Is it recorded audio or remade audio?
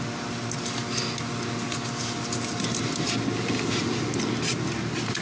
recorded